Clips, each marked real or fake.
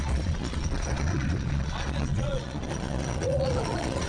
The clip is fake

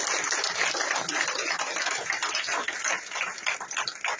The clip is real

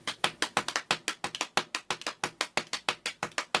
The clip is real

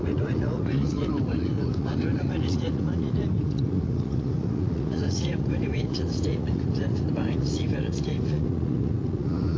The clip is fake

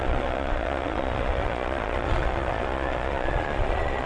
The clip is fake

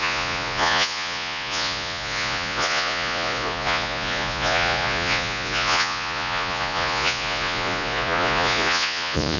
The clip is fake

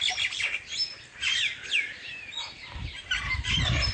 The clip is real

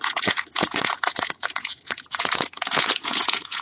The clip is fake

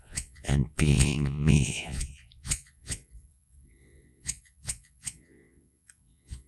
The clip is fake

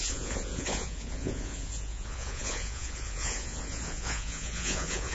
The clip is fake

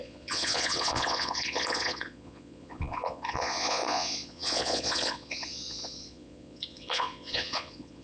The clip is fake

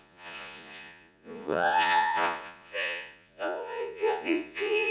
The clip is fake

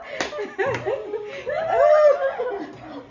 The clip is real